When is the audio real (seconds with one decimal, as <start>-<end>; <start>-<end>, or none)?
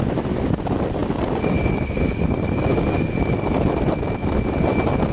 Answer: 0.0-5.1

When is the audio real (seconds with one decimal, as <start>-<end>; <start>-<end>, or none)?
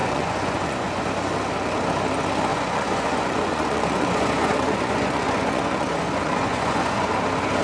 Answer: 1.1-2.5; 7.1-7.6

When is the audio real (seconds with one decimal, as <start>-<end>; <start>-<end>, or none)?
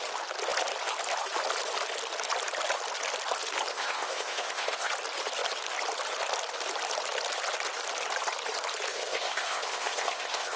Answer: 0.0-3.7; 4.9-8.9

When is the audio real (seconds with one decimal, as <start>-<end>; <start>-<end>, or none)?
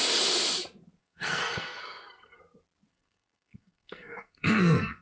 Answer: 0.0-1.0; 2.4-2.9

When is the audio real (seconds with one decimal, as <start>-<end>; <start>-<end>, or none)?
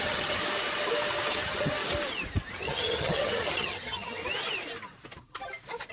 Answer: 0.4-1.4; 1.8-2.5; 4.2-5.9